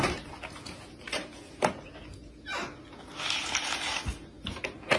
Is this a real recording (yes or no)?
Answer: yes